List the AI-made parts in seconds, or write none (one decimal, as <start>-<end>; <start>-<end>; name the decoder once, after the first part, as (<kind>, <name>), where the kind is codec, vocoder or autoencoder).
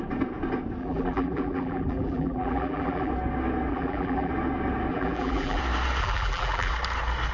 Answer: 0.8-3.1 (vocoder, BigVGAN v2); 3.7-4.3; 4.9-5.6; 6.0-6.7